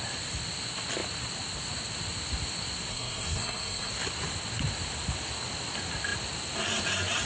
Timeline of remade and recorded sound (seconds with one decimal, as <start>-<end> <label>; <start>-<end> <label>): 0.0-2.9 recorded; 2.9-3.9 remade; 3.9-7.3 recorded